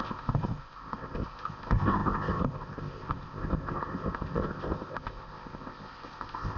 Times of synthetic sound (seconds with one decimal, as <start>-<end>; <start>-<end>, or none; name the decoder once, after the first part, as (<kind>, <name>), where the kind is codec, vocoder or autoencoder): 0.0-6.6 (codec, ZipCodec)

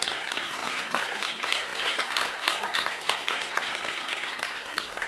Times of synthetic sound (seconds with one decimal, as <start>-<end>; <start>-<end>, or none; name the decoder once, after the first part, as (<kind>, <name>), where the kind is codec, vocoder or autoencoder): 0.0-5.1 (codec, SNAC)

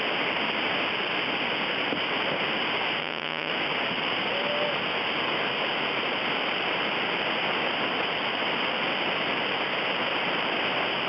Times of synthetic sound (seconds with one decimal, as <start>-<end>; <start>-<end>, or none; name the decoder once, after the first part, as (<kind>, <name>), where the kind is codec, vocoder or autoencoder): 3.0-3.5 (vocoder, HiFi-GAN)

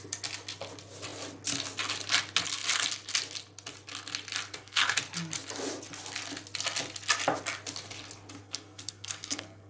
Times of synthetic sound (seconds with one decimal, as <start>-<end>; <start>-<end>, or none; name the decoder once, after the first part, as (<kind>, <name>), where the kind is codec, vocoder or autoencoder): 4.5-5.0 (codec, SNAC); 8.4-9.7

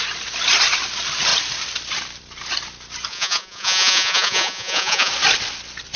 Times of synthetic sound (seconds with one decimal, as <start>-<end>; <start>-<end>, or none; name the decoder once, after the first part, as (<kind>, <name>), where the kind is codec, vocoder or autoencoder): 3.1-5.1 (vocoder, Vocos)

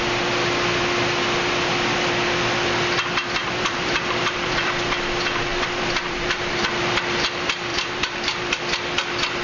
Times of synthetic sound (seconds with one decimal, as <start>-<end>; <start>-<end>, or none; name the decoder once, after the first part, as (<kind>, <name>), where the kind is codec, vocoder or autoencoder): 3.4-4.9 (vocoder, BigVGAN v2); 5.5-6.7; 7.7-8.6